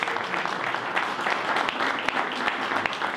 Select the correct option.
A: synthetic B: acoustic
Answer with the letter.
B